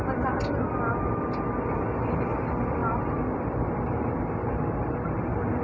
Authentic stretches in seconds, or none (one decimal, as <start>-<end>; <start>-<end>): 0.0-5.6